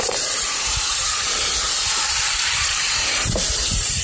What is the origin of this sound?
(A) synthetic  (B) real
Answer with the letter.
A